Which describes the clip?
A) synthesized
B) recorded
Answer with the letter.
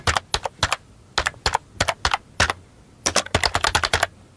B